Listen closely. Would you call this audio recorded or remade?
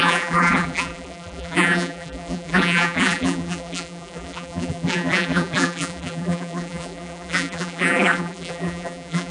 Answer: remade